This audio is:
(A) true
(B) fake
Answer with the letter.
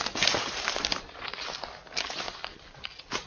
A